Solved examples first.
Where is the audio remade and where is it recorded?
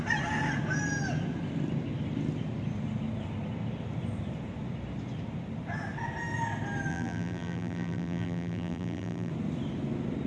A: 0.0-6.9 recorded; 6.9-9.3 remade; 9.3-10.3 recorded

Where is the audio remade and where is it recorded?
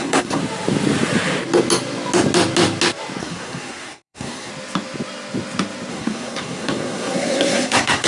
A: 0.0-0.4 remade; 0.4-3.2 recorded; 3.2-4.5 remade; 4.5-5.9 recorded; 5.9-8.1 remade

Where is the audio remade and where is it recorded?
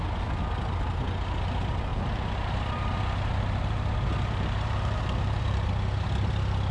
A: 0.0-1.9 recorded; 1.9-5.7 remade; 5.7-6.7 recorded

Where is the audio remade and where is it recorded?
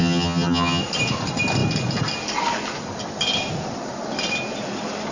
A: 0.0-0.8 remade; 0.8-5.1 recorded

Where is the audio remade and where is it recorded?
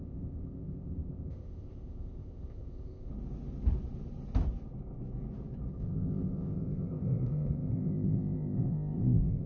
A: 0.0-3.1 remade; 3.1-5.7 recorded; 5.7-9.5 remade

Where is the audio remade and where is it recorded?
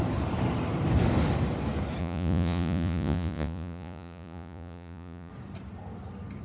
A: 0.0-2.0 recorded; 2.0-5.3 remade; 5.3-6.4 recorded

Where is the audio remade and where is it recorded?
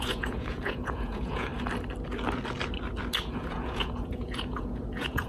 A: 0.0-1.5 remade; 1.5-3.3 recorded; 3.3-5.3 remade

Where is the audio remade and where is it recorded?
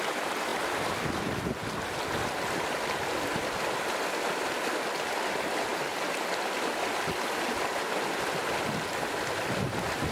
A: 0.0-10.1 recorded